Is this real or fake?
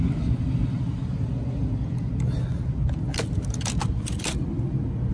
real